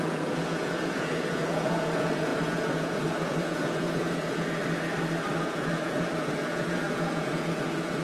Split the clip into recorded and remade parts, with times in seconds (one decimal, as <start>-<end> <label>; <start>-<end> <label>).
0.0-4.6 remade; 4.6-5.4 recorded; 5.4-8.0 remade